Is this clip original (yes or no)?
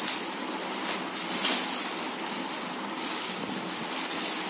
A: yes